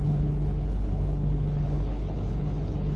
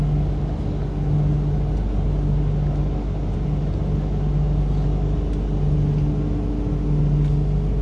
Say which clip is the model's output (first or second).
first